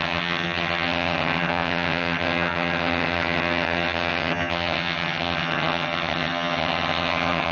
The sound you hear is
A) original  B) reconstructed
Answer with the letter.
B